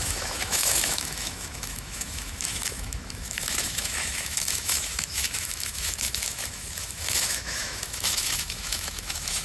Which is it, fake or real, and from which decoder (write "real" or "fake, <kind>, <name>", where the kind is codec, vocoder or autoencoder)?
fake, autoencoder, DAC-VAE